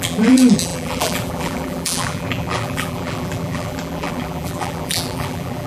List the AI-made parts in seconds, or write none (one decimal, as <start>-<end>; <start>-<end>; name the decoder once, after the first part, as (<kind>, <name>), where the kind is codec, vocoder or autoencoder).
0.0-5.7 (vocoder, BigVGAN v2)